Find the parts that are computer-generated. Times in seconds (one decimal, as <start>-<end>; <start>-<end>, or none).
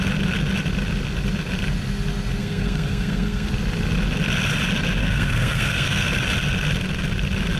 2.4-3.5; 5.0-6.1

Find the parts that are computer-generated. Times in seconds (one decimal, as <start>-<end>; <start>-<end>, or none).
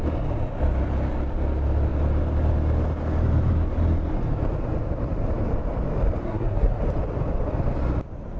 6.2-6.8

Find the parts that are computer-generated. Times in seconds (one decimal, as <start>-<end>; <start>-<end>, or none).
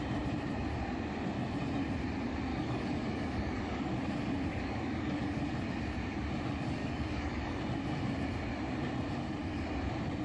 2.5-3.9; 4.5-5.4; 6.8-7.6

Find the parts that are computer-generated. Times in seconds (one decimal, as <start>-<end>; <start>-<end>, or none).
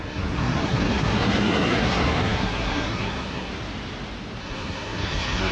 0.0-3.5; 4.4-5.5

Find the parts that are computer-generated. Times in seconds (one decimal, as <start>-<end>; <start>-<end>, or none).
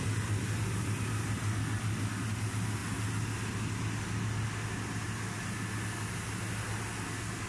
none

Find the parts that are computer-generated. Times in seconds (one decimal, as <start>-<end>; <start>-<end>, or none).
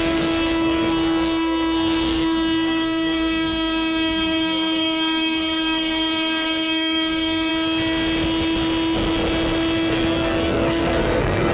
0.0-7.5; 9.9-11.5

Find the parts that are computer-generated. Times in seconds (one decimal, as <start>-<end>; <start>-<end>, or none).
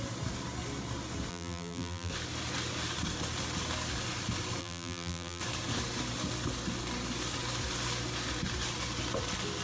1.3-2.1; 4.6-5.4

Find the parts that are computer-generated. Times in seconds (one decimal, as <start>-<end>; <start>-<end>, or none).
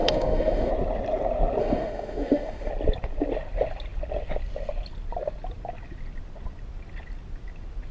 0.0-0.7; 1.6-2.7